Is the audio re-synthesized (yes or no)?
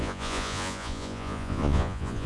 yes